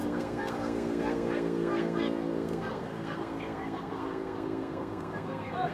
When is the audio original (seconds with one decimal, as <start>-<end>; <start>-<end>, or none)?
none